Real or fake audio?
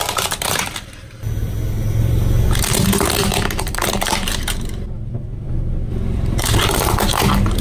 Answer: fake